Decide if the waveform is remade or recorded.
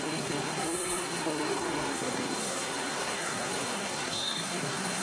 remade